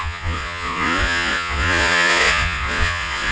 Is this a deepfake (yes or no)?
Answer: yes